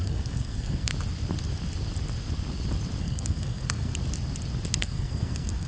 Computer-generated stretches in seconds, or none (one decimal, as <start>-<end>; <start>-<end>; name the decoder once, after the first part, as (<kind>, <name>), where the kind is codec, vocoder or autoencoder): 0.0-0.9 (codec, SNAC); 3.0-3.9; 4.8-5.7